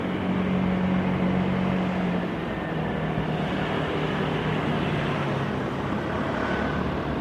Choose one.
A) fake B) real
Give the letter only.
B